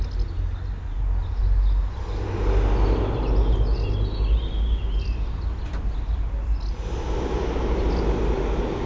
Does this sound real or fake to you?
real